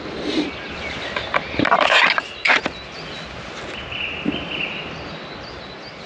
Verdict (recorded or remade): recorded